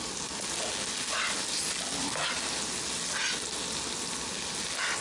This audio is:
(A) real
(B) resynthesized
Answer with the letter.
A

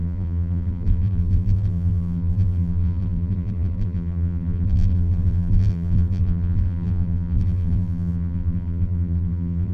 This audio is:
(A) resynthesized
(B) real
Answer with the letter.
A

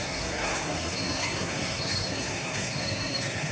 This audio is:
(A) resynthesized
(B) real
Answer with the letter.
A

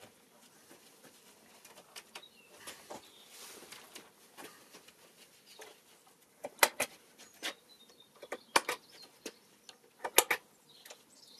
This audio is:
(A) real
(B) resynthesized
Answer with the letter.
A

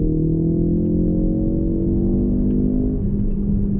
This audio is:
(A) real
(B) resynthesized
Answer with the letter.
A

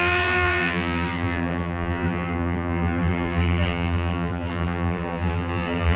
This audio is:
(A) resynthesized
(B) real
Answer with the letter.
A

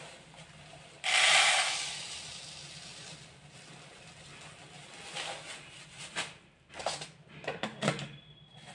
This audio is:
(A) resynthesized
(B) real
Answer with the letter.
B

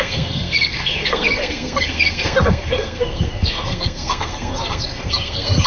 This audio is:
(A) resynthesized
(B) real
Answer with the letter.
A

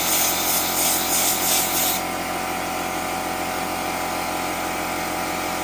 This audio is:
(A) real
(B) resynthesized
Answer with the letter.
A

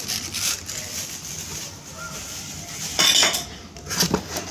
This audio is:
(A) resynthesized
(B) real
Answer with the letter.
B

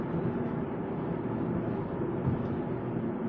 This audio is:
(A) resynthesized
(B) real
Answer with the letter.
B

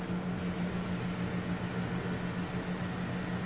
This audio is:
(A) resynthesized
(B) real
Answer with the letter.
B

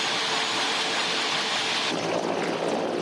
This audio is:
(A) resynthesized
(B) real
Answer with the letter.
B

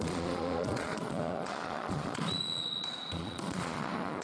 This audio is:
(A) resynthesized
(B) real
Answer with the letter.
A